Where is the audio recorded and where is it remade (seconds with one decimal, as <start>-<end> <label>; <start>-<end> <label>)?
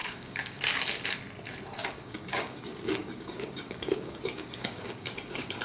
0.0-0.6 remade; 0.6-1.8 recorded; 1.8-5.6 remade